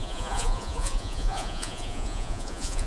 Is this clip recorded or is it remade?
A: remade